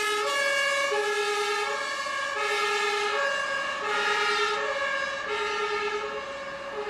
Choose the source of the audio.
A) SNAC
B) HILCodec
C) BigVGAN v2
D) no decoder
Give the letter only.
D